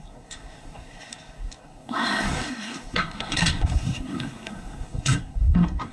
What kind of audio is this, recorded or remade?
remade